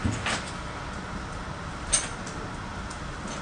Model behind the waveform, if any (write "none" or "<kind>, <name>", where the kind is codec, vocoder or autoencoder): none